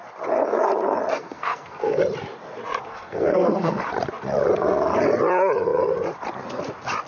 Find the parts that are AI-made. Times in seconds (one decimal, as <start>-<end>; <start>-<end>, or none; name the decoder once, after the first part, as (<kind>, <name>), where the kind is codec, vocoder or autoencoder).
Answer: 1.1-2.0 (codec, SNAC); 2.9-3.8